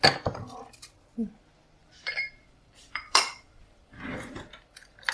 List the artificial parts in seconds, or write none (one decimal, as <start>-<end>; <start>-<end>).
1.8-5.1